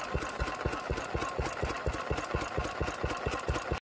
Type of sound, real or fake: real